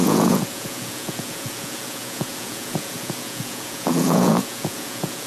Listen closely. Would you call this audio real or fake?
fake